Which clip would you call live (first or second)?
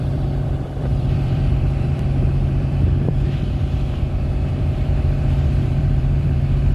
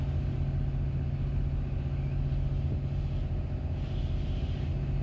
second